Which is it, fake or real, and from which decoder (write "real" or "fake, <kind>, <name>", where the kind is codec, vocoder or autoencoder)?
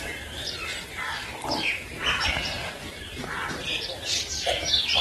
fake, vocoder, BigVGAN v2